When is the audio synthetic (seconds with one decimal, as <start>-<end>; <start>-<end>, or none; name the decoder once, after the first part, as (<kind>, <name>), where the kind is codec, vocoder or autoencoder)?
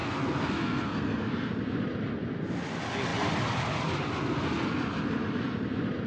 0.0-1.5 (codec, SNAC)